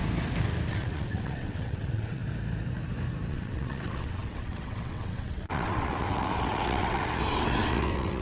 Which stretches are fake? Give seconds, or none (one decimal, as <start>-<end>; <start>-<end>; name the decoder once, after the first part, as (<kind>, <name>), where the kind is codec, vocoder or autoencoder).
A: 0.7-2.2 (vocoder, WaveNeXt); 3.3-8.2